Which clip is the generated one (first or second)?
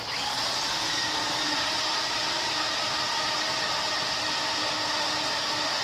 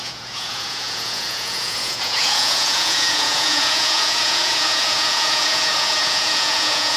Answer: second